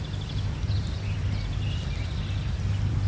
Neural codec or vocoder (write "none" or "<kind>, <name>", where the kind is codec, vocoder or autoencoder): none